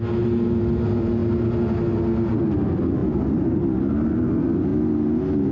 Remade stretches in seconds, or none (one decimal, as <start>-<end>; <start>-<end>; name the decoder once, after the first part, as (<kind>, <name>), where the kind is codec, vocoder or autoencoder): none